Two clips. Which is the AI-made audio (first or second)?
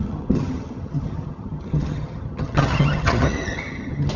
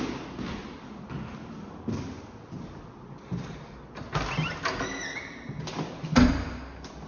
first